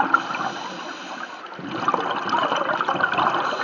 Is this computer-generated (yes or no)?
no